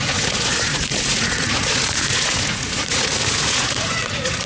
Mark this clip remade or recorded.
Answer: remade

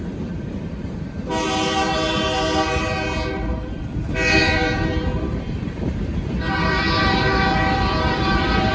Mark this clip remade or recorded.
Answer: remade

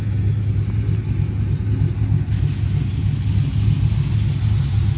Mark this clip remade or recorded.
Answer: recorded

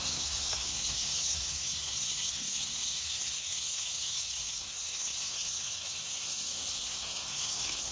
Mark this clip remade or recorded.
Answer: remade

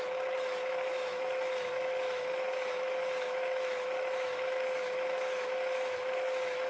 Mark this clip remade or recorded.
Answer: remade